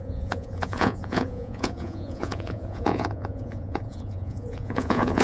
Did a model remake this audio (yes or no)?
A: yes